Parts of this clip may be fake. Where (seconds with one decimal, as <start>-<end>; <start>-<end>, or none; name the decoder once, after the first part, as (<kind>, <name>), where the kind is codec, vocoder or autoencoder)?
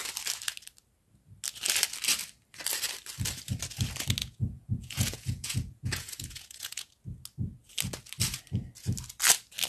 4.2-6.9 (vocoder, Vocos)